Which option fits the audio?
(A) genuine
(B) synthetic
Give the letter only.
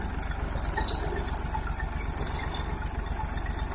A